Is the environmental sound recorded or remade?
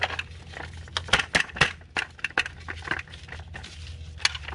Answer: recorded